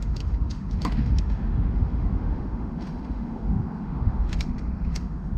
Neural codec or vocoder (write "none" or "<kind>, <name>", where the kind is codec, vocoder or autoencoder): autoencoder, DAC-VAE